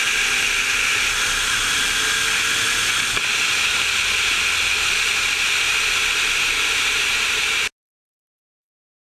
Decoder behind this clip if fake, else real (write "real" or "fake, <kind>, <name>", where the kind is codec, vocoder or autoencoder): real